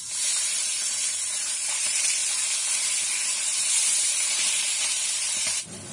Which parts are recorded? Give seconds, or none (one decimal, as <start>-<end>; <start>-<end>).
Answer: 2.2-3.2